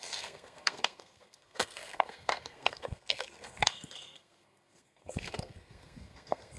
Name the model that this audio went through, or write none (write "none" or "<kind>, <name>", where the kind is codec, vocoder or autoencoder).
codec, SNAC